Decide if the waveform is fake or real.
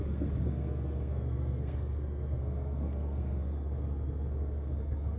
fake